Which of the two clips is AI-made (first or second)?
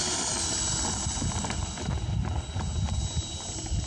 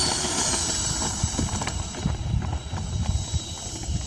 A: second